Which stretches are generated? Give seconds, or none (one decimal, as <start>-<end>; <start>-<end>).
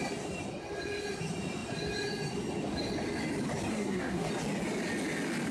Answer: 3.7-4.3